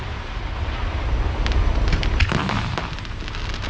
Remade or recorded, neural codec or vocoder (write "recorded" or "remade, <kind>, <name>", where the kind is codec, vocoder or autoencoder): recorded